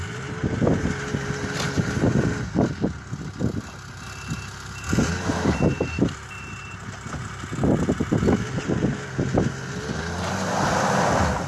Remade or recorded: recorded